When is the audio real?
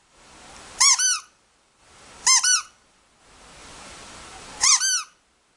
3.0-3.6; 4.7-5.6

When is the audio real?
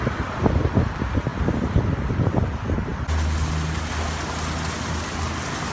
0.0-5.7